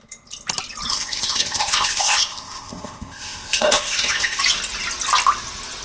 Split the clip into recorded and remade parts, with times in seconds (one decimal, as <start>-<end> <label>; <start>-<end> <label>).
0.0-0.9 recorded; 0.9-4.4 remade; 4.4-5.8 recorded